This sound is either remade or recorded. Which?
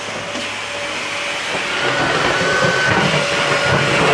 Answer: recorded